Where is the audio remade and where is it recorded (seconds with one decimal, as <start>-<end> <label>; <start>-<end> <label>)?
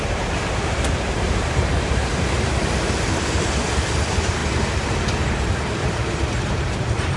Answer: 0.0-4.4 remade; 4.4-5.1 recorded; 5.1-7.2 remade